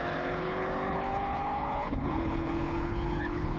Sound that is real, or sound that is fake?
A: fake